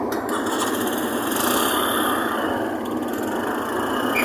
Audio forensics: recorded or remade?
recorded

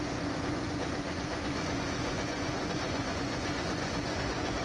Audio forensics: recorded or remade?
remade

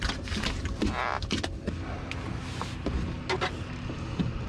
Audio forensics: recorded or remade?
recorded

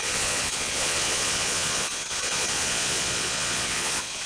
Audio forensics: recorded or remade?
remade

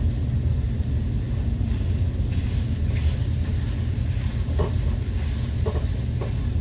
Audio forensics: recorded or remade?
recorded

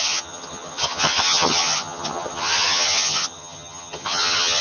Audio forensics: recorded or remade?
remade